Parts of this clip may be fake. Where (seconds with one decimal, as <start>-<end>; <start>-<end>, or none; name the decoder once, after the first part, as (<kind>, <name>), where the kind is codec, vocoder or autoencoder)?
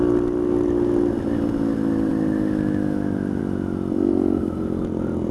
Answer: none